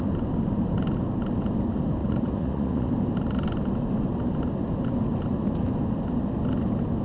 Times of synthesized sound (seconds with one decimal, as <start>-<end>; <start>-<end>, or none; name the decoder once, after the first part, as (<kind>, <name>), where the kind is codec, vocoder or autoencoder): 2.0-2.9 (vocoder, Vocos)